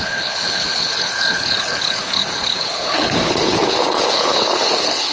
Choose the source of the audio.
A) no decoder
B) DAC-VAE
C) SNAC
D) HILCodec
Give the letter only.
D